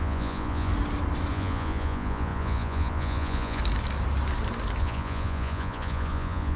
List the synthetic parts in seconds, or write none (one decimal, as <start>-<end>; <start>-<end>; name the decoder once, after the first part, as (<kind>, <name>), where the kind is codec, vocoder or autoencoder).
0.0-0.7 (vocoder, Vocos); 1.3-3.6; 4.8-6.6